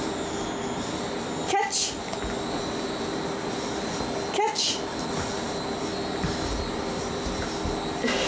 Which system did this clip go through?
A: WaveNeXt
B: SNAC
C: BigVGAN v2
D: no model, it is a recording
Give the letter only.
D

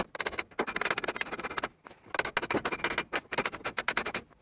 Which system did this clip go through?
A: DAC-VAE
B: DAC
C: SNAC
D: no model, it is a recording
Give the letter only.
D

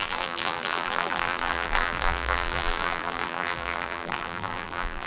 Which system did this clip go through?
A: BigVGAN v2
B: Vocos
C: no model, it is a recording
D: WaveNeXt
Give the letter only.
A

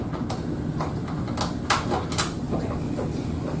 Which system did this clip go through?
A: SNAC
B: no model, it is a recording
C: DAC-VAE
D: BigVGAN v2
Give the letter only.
B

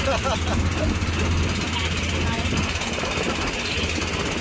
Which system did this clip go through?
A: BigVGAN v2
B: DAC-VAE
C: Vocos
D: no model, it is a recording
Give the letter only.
D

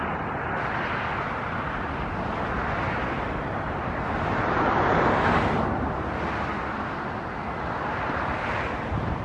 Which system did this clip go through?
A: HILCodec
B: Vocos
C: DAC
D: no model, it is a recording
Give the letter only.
D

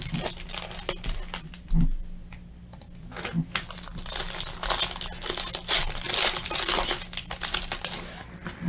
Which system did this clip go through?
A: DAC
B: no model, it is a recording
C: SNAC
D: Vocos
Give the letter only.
B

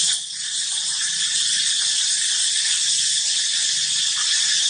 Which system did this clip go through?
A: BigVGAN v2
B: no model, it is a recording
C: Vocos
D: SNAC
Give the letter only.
B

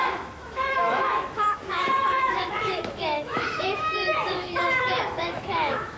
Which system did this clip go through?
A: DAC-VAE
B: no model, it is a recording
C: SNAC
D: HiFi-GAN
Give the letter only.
A